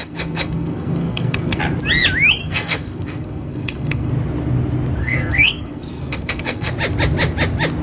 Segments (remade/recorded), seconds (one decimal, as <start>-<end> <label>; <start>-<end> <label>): 0.0-1.6 remade; 1.6-2.4 recorded; 2.4-4.1 remade; 4.1-5.0 recorded; 5.0-6.7 remade; 6.7-7.8 recorded